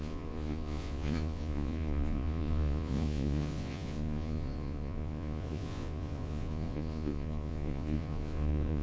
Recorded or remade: remade